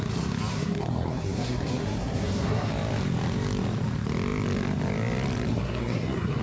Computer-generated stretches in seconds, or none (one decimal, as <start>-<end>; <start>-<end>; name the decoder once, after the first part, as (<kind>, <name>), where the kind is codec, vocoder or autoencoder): 0.5-2.7 (codec, SNAC); 5.5-6.4